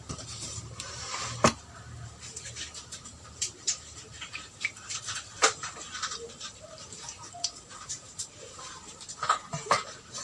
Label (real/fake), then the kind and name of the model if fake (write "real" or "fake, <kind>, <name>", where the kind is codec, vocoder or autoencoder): fake, vocoder, BigVGAN v2